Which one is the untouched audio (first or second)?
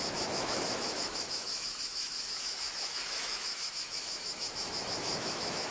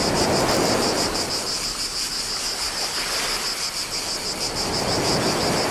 second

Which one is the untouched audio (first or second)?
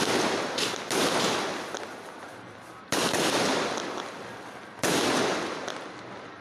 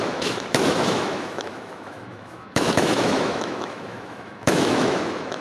first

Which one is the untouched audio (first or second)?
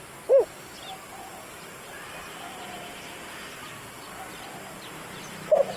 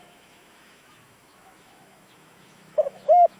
first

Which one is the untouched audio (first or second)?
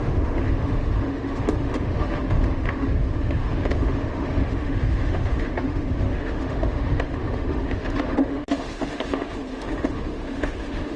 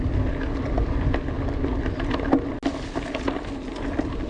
second